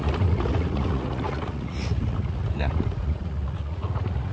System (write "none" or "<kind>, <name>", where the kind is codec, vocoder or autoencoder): vocoder, Vocos